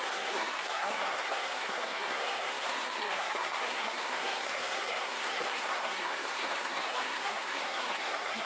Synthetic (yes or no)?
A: yes